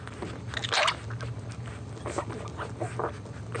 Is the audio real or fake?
real